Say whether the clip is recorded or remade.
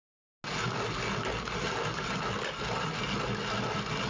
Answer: recorded